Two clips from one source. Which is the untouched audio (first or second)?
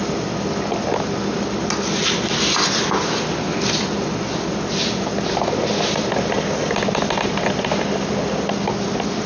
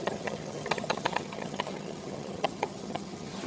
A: first